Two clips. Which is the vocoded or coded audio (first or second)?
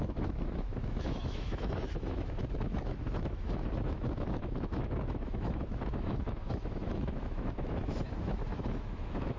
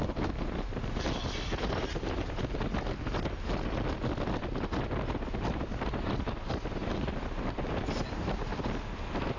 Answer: first